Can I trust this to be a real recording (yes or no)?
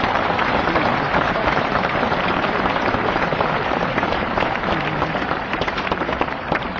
no